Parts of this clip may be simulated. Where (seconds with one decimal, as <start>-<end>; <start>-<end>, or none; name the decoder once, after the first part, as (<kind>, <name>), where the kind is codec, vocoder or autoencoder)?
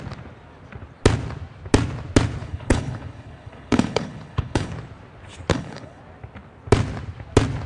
2.4-4.7 (codec, HILCodec); 5.5-6.0